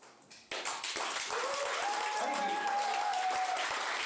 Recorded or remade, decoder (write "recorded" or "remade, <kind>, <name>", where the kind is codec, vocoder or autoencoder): recorded